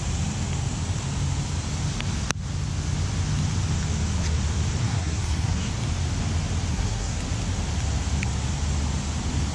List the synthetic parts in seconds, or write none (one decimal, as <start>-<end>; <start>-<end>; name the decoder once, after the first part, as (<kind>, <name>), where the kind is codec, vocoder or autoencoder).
4.8-5.7 (codec, SNAC); 6.7-7.2